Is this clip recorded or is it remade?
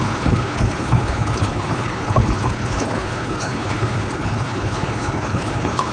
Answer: remade